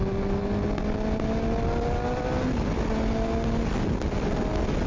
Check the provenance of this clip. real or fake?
real